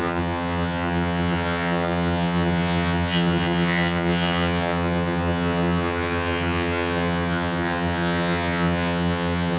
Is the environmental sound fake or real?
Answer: fake